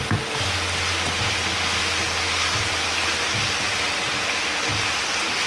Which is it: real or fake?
real